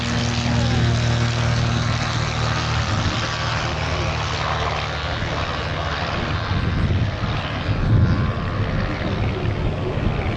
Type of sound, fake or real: real